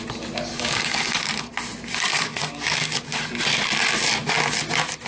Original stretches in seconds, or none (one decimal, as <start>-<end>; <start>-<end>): 0.0-0.5; 1.5-2.1; 3.2-5.1